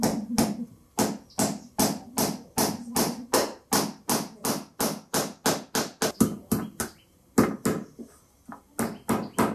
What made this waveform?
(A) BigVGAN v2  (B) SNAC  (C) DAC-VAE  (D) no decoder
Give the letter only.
D